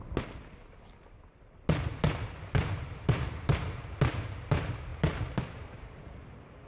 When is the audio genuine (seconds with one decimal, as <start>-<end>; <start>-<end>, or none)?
0.0-6.7